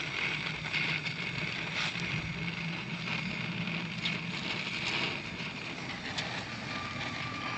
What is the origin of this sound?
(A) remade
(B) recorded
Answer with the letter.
B